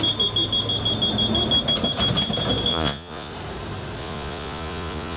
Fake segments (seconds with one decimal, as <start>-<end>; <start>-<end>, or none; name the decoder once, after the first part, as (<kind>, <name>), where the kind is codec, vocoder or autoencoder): 2.7-3.3 (vocoder, Vocos); 4.0-5.2